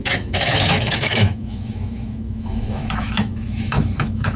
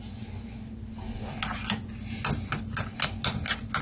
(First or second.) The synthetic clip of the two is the first